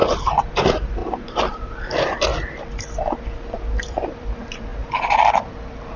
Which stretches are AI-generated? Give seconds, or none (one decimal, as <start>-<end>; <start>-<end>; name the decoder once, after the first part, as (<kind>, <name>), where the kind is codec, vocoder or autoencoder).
0.0-2.3 (vocoder, BigVGAN v2); 3.8-4.7; 5.4-6.0